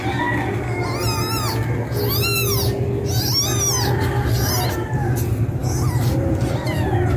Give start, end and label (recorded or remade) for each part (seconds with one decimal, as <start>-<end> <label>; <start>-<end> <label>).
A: 0.0-7.2 recorded

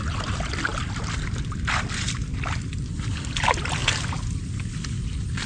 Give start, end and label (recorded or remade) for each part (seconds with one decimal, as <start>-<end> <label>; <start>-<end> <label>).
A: 0.0-0.7 remade; 0.7-3.1 recorded; 3.1-3.8 remade; 3.8-5.0 recorded; 5.0-5.5 remade

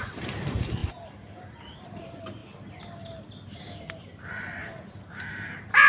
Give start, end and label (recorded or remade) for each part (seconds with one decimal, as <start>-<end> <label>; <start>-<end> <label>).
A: 0.0-2.4 remade; 2.4-3.9 recorded; 3.9-5.9 remade

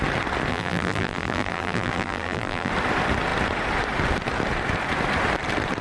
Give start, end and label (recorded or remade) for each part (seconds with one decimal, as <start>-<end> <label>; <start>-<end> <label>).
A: 0.0-0.5 recorded; 0.5-2.7 remade; 2.7-5.8 recorded